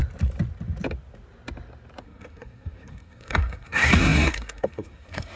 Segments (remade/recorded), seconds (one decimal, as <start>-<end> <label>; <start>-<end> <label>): 0.0-2.0 recorded; 2.0-5.4 remade